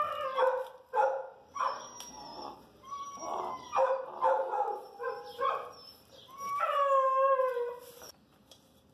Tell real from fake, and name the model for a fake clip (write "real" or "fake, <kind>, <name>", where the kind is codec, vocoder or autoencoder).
real